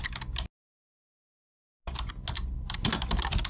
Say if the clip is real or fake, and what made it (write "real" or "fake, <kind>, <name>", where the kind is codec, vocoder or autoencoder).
real